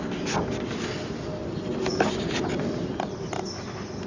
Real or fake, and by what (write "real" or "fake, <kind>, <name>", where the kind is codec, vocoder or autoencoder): real